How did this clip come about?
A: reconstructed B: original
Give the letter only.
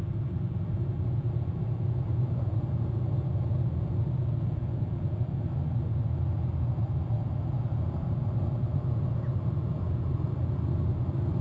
B